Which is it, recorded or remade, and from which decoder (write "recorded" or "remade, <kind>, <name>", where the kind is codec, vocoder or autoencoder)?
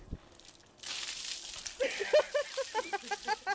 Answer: recorded